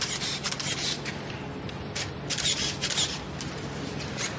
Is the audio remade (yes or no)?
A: no